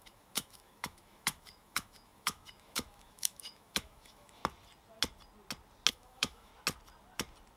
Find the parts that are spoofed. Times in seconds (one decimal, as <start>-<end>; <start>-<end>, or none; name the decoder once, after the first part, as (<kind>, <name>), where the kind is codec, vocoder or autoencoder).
0.0-4.4 (autoencoder, DAC-VAE); 5.9-6.5